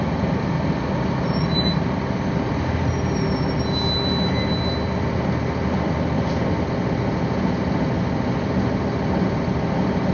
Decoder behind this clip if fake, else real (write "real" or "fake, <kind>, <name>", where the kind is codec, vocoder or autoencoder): real